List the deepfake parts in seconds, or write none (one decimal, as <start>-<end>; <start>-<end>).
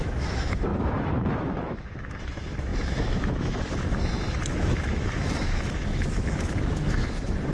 0.0-7.5